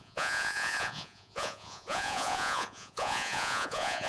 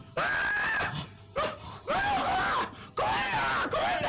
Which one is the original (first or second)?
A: second